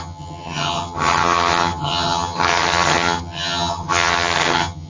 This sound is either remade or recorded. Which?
remade